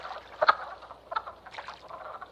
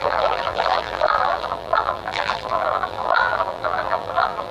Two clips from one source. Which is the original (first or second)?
first